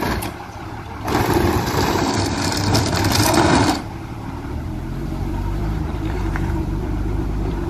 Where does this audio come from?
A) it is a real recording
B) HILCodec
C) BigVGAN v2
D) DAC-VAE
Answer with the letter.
C